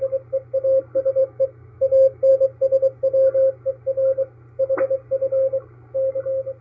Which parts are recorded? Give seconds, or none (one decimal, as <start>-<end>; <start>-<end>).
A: 0.0-1.2; 2.3-6.6